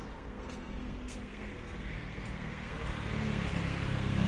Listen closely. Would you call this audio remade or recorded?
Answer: remade